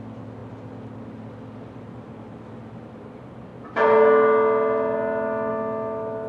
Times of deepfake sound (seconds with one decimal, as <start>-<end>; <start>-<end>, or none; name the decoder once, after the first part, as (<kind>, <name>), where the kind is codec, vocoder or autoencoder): none

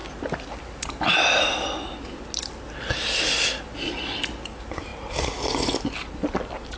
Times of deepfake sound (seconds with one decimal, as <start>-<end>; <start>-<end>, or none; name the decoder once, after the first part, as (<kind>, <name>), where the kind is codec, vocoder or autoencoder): none

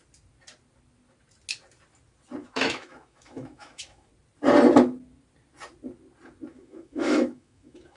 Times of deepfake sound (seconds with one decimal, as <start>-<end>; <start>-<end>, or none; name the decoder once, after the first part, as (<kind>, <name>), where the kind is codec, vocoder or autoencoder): 2.4-4.1 (autoencoder, DAC-VAE); 6.5-8.0

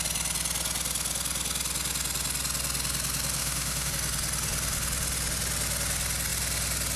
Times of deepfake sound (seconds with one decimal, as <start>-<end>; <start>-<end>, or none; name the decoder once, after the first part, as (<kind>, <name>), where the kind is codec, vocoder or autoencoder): 3.4-3.9 (autoencoder, DAC-VAE)

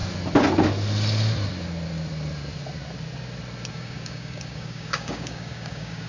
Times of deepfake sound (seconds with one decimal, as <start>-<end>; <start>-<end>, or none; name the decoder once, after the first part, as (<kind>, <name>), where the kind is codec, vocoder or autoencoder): 3.7-6.1 (codec, DAC)

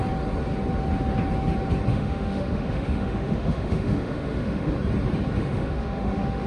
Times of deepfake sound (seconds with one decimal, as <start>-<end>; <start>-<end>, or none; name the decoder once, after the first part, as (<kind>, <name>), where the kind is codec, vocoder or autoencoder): 1.9-4.7 (autoencoder, DAC-VAE); 5.4-6.5

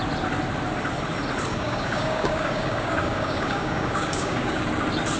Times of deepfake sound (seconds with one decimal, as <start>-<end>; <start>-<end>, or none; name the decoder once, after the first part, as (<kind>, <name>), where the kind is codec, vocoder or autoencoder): 1.5-4.6 (codec, DAC)